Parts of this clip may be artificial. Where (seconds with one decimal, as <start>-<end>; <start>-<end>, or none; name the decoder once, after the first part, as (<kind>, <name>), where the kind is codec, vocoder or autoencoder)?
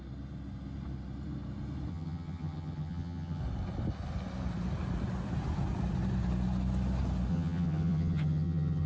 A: 1.9-3.4 (vocoder, HiFi-GAN); 7.3-8.9